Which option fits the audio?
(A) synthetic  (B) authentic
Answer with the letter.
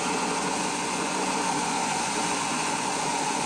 A